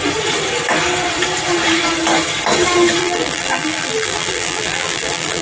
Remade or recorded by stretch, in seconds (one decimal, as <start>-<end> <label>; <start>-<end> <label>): 0.0-3.0 recorded; 3.0-5.4 remade